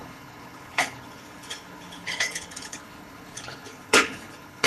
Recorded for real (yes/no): no